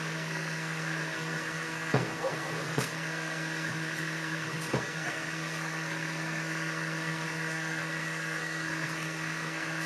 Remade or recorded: remade